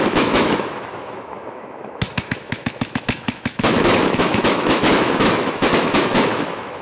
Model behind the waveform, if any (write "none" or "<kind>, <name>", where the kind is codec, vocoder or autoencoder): autoencoder, DAC-VAE